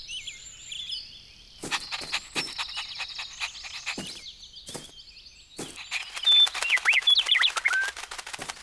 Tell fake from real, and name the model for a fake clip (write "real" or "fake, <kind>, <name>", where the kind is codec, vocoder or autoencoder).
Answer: real